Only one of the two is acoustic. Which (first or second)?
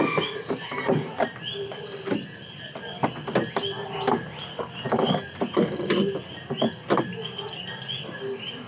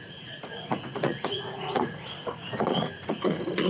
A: first